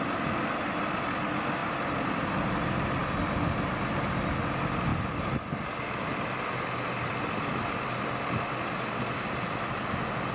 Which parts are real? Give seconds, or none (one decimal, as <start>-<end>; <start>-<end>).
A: 0.0-10.3